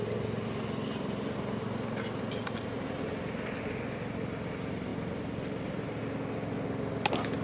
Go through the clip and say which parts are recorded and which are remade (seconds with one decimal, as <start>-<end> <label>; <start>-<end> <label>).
0.0-7.4 recorded